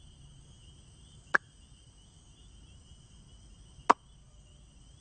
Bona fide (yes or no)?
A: yes